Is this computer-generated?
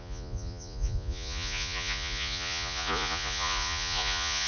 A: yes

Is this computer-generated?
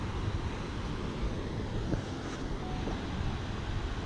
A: no